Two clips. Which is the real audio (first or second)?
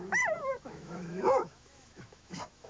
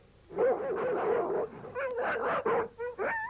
second